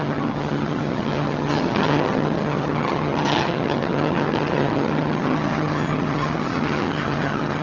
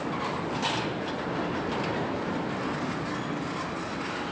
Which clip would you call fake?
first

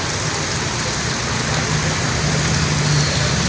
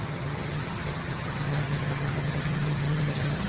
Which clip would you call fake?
second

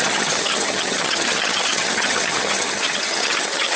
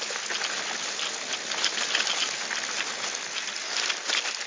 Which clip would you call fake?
first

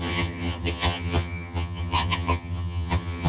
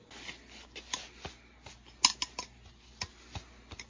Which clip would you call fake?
first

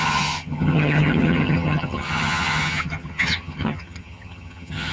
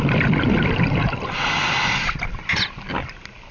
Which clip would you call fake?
first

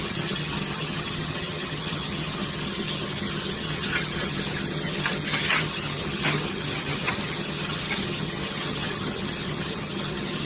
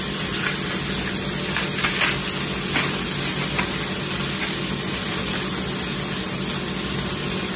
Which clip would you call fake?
first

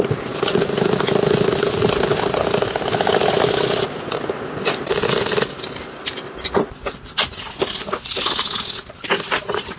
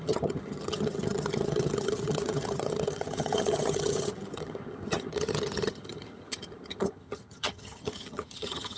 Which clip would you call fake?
second